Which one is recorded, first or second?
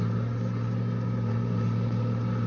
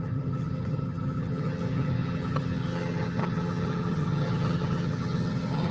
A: first